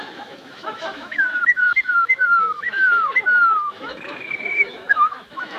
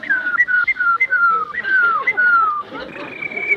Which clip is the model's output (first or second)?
first